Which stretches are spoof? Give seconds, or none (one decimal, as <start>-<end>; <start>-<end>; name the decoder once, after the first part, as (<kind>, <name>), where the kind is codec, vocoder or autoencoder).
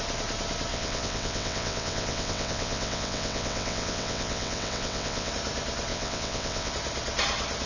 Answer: 0.7-5.3 (vocoder, WaveNeXt); 5.9-6.7